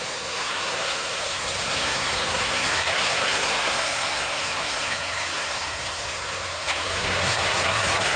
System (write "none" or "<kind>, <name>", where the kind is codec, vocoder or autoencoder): codec, SNAC